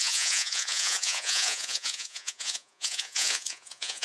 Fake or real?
fake